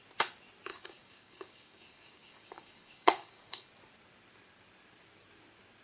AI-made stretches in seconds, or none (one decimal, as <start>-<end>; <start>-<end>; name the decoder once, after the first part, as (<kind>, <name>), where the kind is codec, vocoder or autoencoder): 0.7-3.7 (codec, DAC)